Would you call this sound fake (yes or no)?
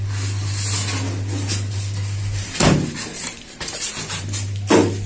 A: no